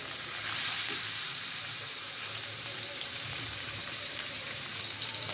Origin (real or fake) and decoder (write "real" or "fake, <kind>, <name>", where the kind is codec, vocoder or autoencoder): fake, vocoder, BigVGAN v2